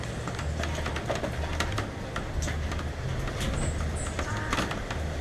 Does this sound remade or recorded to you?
recorded